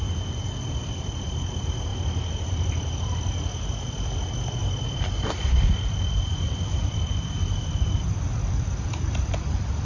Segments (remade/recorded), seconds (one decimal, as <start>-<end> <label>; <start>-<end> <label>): 0.0-0.8 recorded; 0.8-1.4 remade; 1.4-4.6 recorded; 4.6-9.3 remade; 9.3-9.8 recorded